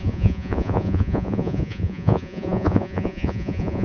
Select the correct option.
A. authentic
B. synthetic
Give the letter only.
B